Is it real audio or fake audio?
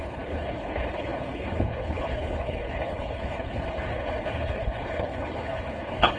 fake